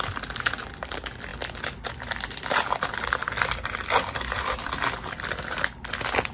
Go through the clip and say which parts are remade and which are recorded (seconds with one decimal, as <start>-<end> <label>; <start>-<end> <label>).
0.0-6.3 recorded